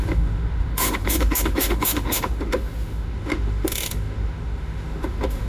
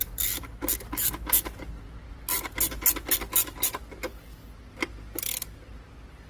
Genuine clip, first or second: second